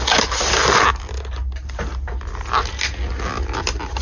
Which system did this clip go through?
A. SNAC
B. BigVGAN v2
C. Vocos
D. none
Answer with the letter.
D